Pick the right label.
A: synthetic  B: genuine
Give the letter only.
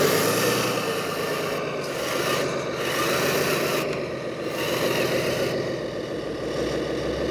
B